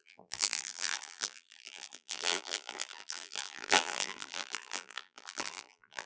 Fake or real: fake